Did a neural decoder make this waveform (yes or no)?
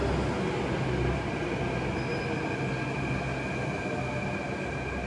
no